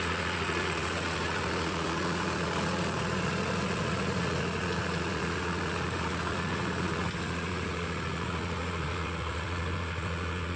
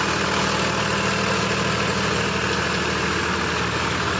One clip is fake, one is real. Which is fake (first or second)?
first